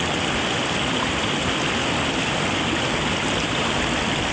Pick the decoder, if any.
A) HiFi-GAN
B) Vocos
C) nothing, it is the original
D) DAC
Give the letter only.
C